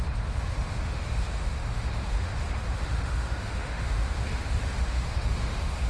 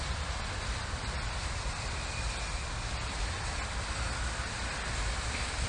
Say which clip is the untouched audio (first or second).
second